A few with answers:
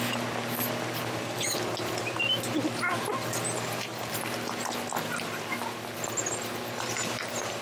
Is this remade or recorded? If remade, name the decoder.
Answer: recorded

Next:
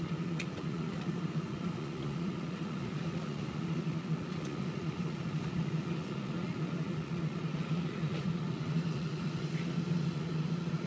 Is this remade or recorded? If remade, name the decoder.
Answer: remade, vocoder, Vocos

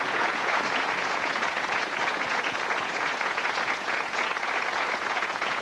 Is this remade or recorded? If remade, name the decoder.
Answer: remade, vocoder, Vocos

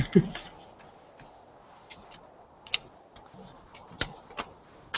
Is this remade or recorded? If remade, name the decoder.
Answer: recorded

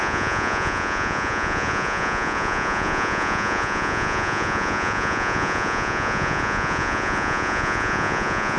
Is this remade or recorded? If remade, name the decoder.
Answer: remade, vocoder, Vocos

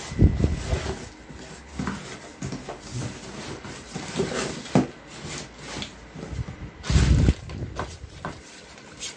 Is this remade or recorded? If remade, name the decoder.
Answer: recorded